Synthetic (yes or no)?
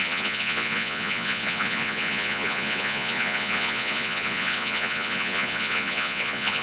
yes